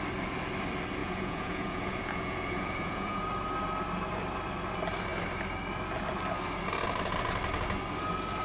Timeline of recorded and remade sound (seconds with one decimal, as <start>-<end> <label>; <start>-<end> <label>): 0.0-1.0 recorded; 1.0-3.2 remade; 3.2-8.4 recorded